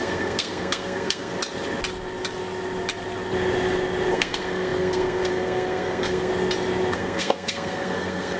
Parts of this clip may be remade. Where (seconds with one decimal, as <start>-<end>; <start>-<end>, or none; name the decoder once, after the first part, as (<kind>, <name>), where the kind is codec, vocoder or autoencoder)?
0.0-1.3 (codec, SNAC); 4.1-6.3; 6.9-8.4